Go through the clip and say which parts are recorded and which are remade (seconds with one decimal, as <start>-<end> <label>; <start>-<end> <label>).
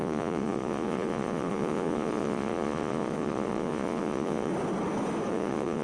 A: 0.0-4.5 remade; 4.5-5.3 recorded; 5.3-5.8 remade